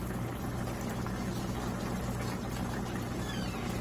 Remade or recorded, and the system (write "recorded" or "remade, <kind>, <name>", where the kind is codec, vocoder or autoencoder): recorded